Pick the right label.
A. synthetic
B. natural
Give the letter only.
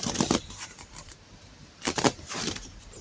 A